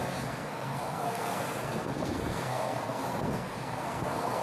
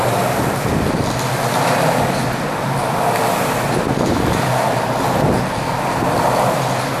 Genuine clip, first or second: second